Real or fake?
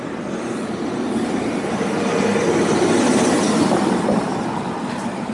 fake